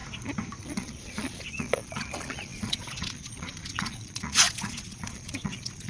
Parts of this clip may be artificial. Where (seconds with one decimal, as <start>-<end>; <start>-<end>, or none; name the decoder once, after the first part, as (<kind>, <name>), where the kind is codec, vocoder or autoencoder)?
0.6-5.9 (vocoder, Vocos)